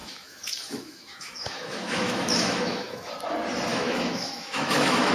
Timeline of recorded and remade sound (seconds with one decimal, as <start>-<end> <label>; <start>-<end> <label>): 0.0-3.1 remade; 3.1-3.7 recorded; 3.7-5.1 remade